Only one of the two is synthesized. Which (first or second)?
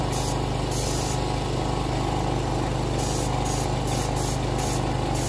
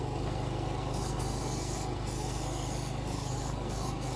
second